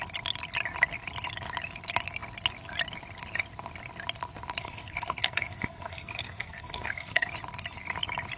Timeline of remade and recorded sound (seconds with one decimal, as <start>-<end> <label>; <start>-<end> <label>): 0.0-4.6 recorded; 4.6-7.3 remade; 7.3-8.4 recorded